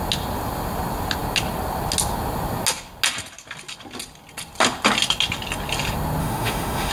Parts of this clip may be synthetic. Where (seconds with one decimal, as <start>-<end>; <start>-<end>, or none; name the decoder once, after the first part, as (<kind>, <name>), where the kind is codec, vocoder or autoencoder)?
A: 6.2-6.9 (autoencoder, DAC-VAE)